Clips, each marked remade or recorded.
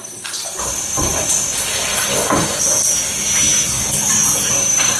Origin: recorded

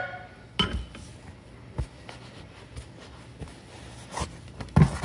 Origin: recorded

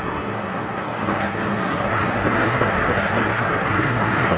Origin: remade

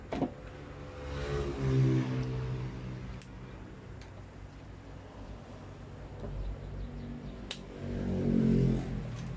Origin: recorded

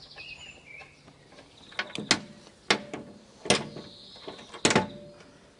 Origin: recorded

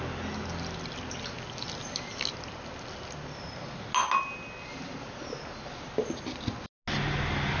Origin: recorded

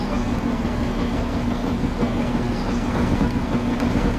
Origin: remade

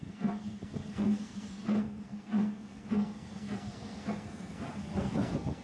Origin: remade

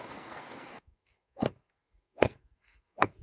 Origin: remade